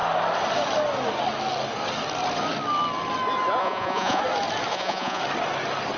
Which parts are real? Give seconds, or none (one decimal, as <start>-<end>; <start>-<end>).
0.0-3.6; 4.2-4.7; 5.2-6.0